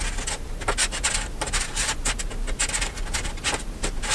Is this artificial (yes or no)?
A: no